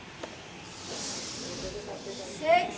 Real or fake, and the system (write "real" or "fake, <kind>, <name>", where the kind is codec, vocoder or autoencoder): fake, vocoder, BigVGAN v2